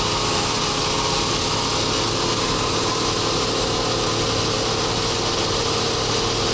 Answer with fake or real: real